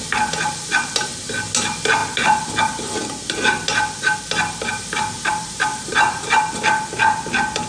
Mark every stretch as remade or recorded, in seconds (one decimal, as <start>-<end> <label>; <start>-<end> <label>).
0.0-5.7 recorded; 5.7-6.4 remade; 6.4-7.7 recorded